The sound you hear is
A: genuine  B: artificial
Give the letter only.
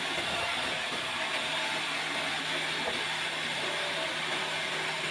A